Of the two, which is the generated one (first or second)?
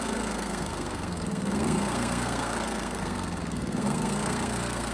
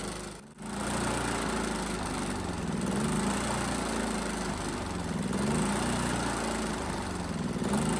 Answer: first